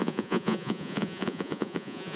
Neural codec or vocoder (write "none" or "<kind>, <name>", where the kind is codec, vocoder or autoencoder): vocoder, Vocos